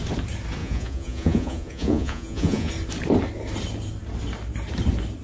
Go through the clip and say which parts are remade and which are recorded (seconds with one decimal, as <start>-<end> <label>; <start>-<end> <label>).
0.0-0.6 recorded; 0.6-2.7 remade; 2.7-5.2 recorded